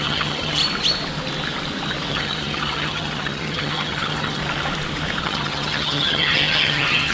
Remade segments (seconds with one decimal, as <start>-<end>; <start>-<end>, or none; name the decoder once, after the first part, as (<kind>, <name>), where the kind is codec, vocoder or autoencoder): 0.0-0.6 (vocoder, HiFi-GAN); 2.1-4.4; 5.2-7.1